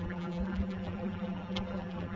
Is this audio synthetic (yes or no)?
yes